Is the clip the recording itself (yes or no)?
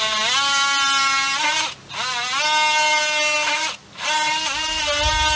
yes